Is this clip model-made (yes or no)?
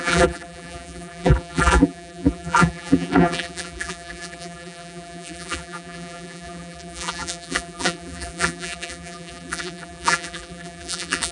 yes